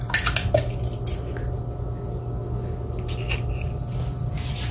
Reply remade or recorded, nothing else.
recorded